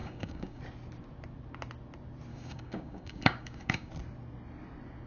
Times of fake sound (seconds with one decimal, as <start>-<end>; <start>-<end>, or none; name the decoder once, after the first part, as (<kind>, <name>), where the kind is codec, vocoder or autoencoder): 0.0-0.6 (codec, DAC); 2.3-3.9